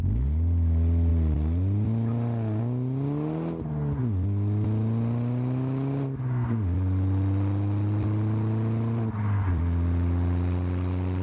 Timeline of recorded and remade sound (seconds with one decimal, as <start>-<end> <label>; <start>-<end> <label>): 0.0-11.2 recorded